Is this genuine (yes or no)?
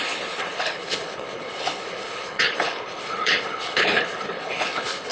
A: no